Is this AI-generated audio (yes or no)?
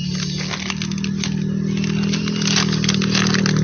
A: no